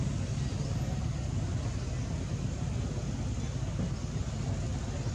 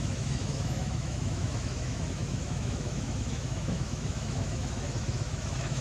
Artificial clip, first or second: second